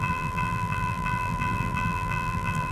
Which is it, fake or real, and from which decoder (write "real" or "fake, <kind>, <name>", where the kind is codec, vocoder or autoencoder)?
fake, vocoder, BigVGAN v2